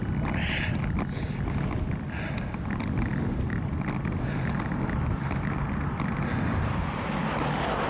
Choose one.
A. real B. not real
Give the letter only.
A